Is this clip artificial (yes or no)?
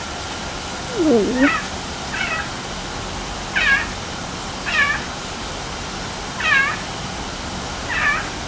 no